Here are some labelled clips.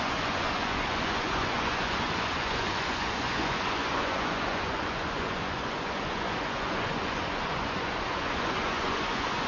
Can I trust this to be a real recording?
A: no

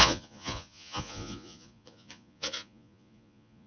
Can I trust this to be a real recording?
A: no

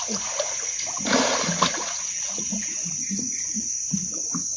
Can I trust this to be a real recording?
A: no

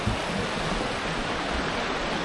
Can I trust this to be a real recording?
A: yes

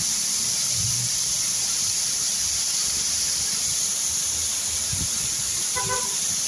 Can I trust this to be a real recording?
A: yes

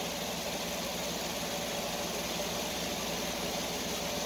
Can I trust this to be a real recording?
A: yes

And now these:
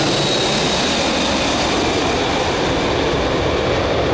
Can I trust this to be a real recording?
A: yes